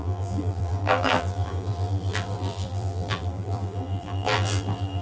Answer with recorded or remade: remade